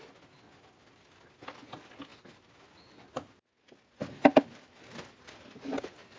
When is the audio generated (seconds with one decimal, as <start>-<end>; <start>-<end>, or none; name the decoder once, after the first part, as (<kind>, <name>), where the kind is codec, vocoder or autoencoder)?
none